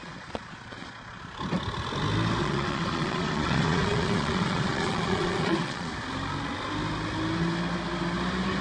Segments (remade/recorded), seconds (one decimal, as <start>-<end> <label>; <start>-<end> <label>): 0.0-1.2 remade; 1.2-2.4 recorded; 2.4-5.9 remade; 5.9-8.6 recorded

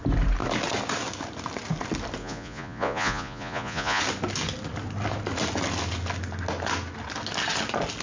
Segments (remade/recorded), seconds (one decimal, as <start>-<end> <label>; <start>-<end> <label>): 0.0-2.2 recorded; 2.2-4.0 remade; 4.0-8.0 recorded

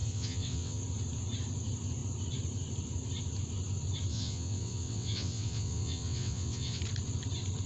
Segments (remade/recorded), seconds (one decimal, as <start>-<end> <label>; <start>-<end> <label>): 0.0-0.8 remade; 0.8-4.1 recorded; 4.1-6.8 remade; 6.8-7.7 recorded

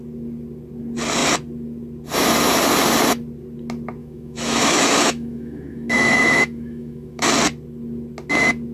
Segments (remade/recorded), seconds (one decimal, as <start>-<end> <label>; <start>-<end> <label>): 0.0-4.0 recorded; 4.0-7.3 remade; 7.3-8.7 recorded

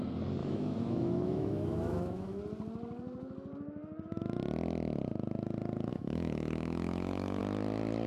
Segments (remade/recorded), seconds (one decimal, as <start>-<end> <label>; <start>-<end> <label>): 0.0-0.4 recorded; 0.4-2.4 remade; 2.4-5.9 recorded; 5.9-7.4 remade; 7.4-8.1 recorded

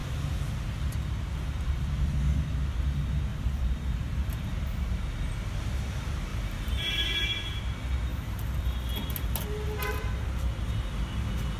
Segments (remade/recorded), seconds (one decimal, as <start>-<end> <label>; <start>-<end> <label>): 0.0-3.3 recorded; 3.3-4.4 remade; 4.4-6.3 recorded; 6.3-7.6 remade; 7.6-8.1 recorded; 8.1-8.6 remade; 8.6-11.6 recorded